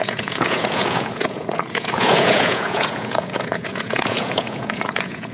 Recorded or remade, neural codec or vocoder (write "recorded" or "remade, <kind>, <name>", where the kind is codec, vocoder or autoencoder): remade, vocoder, Vocos